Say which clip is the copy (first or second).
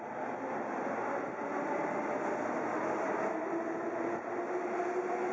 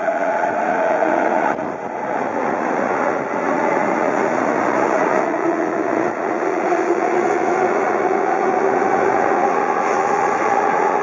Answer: second